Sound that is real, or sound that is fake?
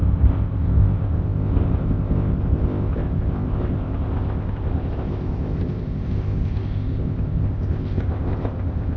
fake